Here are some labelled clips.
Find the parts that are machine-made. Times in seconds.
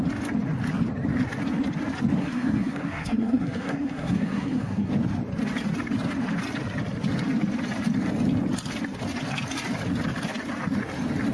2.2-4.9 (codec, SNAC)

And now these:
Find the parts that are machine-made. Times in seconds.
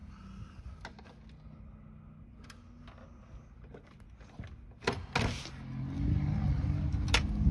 none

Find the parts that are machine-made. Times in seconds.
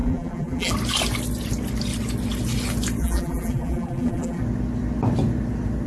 0.0-0.7 (vocoder, BigVGAN v2); 3.0-4.4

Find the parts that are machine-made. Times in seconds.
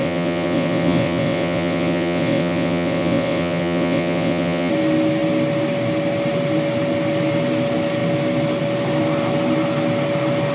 0.0-4.7 (vocoder, WaveNeXt)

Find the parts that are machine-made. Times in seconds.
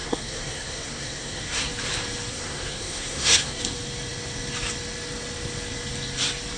0.0-1.7 (codec, SNAC); 2.3-3.6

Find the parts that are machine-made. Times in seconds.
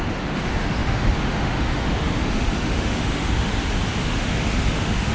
0.0-3.5 (autoencoder, DAC-VAE); 4.0-5.1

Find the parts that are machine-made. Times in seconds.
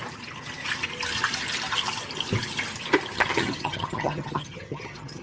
3.1-5.2 (vocoder, HiFi-GAN)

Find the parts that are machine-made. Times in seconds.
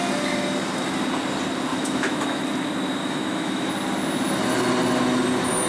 1.7-2.4 (autoencoder, DAC-VAE); 3.0-3.7